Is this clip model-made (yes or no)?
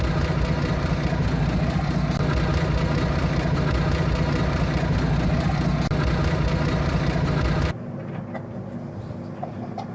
no